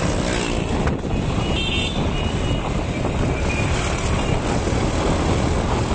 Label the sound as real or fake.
real